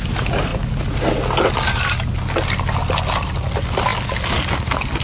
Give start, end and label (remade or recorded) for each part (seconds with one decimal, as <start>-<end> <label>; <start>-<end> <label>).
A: 0.0-5.0 recorded